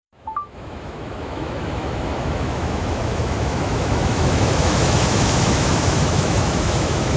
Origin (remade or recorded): remade